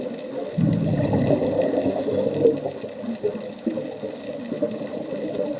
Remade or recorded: recorded